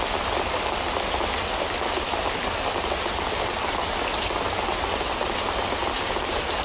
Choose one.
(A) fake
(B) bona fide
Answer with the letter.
B